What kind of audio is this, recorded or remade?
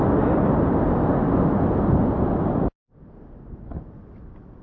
recorded